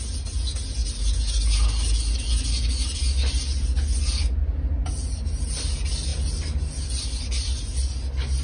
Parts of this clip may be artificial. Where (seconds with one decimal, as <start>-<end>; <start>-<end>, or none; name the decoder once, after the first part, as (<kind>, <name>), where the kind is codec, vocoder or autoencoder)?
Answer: none